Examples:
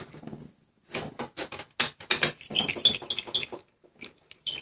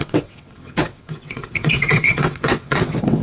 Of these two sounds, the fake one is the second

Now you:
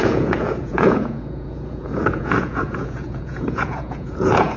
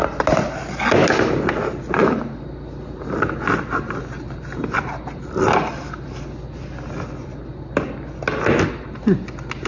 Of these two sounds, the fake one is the first